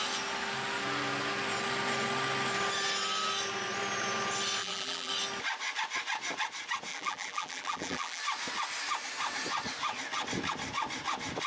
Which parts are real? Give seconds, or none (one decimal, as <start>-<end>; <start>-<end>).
0.0-4.6; 5.1-6.9; 8.2-11.5

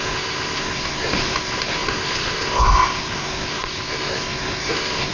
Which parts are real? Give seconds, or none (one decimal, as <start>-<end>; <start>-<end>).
none

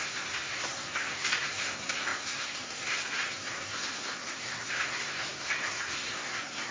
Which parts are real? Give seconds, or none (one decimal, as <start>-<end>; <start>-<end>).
none

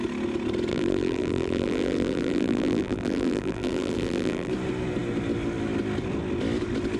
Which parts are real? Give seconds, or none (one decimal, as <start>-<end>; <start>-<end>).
0.0-0.7; 4.5-7.0

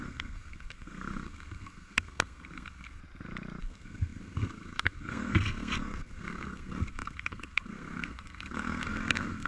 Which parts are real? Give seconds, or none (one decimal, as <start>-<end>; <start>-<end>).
3.0-3.6

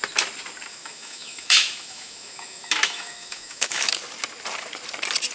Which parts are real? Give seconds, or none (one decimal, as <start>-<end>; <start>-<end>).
0.0-0.7; 3.9-5.3